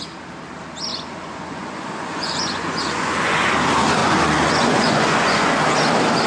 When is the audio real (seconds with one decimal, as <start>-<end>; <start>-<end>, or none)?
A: 0.0-0.9; 3.5-4.0; 5.6-6.3